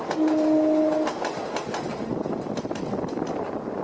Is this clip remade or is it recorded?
recorded